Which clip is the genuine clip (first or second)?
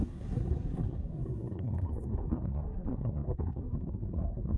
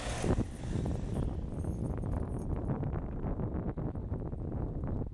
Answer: second